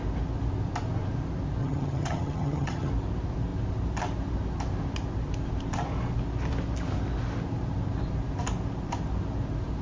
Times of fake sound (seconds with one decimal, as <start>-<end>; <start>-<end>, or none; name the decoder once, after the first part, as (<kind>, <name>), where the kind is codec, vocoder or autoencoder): 1.6-2.9 (vocoder, HiFi-GAN)